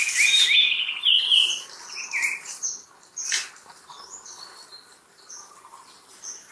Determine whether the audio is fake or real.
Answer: real